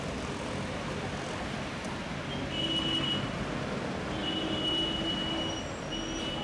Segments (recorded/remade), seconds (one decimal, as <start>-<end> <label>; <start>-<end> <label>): 0.0-6.4 recorded